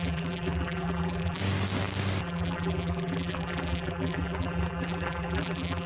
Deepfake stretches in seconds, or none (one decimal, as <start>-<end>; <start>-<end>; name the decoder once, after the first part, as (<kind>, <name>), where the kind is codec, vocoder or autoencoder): 0.0-1.4 (vocoder, BigVGAN v2); 2.2-5.9